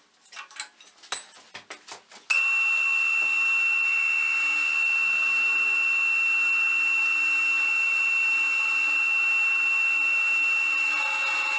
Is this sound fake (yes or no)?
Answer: no